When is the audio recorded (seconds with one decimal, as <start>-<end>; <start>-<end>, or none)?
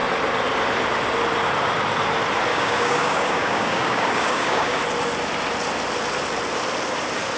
0.0-2.5; 4.8-7.4